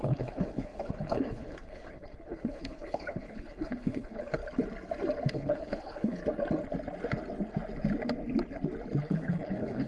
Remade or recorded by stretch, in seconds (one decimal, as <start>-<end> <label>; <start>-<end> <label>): 0.0-4.4 remade; 4.4-5.3 recorded; 5.3-6.2 remade; 6.2-9.0 recorded; 9.0-9.9 remade